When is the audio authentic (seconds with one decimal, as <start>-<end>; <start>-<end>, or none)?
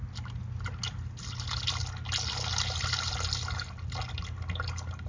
0.0-5.1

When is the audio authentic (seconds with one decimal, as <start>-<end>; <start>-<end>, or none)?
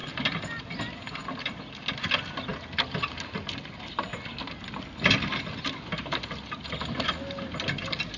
0.0-8.2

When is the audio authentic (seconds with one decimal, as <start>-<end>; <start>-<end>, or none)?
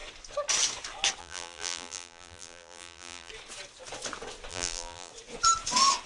0.0-1.2; 3.3-4.5; 5.1-6.1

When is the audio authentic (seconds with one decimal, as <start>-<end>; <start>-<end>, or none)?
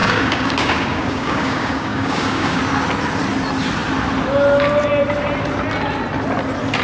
2.6-6.8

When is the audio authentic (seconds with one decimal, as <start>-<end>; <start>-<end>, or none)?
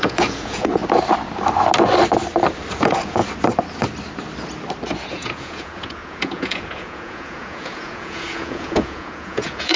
0.8-2.7; 3.2-5.1